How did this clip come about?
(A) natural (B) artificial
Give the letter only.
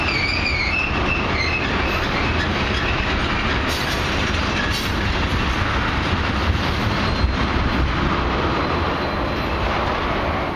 A